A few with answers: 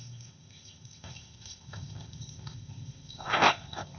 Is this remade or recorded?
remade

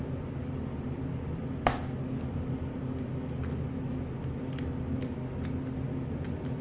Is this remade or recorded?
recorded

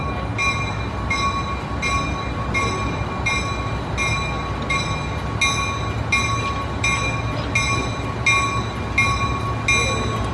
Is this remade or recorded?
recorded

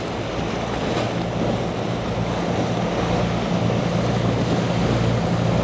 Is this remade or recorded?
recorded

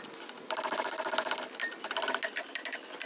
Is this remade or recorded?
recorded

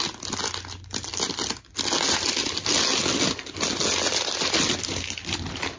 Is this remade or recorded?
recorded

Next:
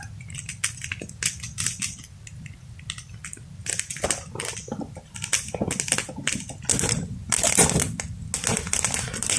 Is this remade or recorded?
recorded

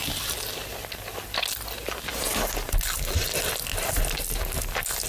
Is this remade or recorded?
recorded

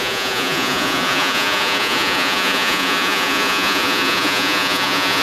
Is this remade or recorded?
remade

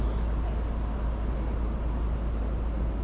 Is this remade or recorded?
recorded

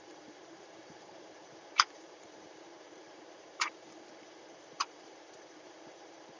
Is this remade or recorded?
remade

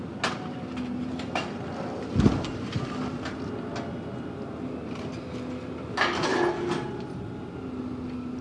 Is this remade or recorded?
recorded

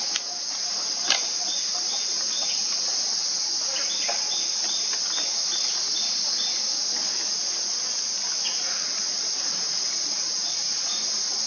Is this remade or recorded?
recorded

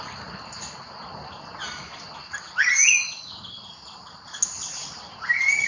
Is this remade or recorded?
recorded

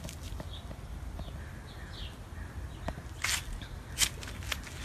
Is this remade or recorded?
recorded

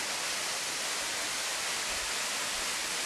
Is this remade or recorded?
recorded